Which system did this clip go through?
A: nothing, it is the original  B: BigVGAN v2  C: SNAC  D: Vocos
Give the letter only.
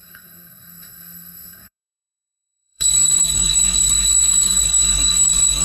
C